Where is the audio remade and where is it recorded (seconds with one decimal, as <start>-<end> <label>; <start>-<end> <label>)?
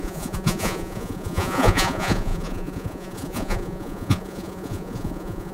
0.0-5.5 remade